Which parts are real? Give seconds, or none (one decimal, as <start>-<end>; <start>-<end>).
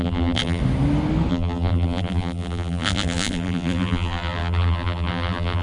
0.6-1.3